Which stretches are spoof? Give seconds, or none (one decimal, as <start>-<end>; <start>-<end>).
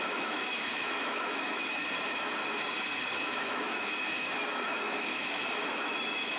0.0-1.8; 2.9-6.4